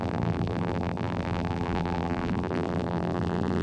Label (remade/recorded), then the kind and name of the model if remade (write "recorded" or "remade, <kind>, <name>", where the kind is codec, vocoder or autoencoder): remade, vocoder, BigVGAN v2